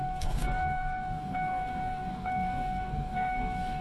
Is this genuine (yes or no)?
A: no